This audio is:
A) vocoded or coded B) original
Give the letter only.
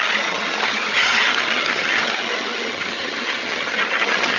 A